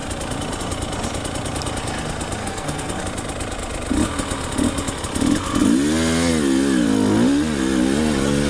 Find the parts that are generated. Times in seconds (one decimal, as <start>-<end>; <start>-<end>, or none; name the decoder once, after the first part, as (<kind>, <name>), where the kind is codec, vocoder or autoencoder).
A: 2.4-3.0 (codec, SNAC)

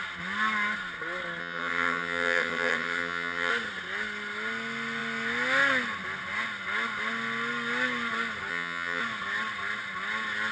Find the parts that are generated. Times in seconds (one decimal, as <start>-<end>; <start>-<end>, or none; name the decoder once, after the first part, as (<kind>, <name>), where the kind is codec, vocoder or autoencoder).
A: 1.4-3.5 (vocoder, HiFi-GAN); 8.5-9.0

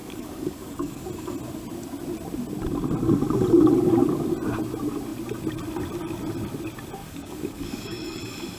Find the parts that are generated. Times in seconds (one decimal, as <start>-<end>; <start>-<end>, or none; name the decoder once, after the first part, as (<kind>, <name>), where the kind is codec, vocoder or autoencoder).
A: 0.0-1.0 (codec, DAC); 7.0-8.2

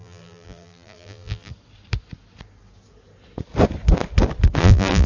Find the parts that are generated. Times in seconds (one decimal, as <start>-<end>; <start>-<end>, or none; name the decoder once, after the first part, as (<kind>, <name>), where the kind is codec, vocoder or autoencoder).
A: 0.0-1.5 (vocoder, BigVGAN v2); 4.6-5.1

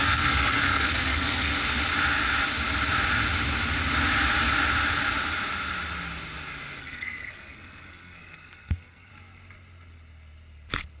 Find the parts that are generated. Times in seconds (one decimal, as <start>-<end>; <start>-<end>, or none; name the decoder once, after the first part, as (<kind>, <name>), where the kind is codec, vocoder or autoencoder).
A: 0.0-1.5 (codec, SNAC); 6.8-9.1

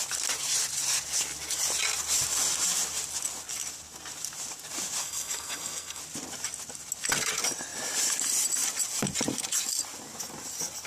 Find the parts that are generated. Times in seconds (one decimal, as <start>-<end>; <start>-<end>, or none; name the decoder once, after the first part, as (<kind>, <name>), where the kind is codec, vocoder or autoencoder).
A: 5.0-6.0 (codec, SNAC)

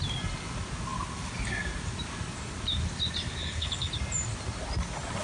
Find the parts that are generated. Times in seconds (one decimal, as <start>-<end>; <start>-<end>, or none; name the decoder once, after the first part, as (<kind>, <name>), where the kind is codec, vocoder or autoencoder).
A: 3.4-3.9 (codec, HILCodec)